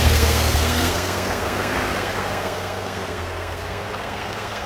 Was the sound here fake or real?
fake